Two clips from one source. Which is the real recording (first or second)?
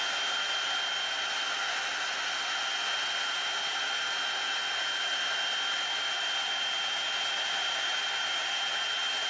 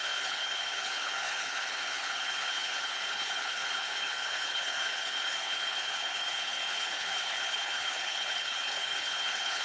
first